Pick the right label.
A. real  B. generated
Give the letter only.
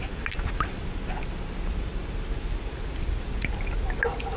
A